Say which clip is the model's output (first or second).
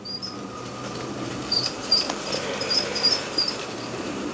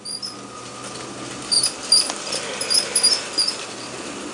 first